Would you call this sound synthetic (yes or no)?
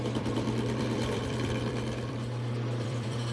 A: yes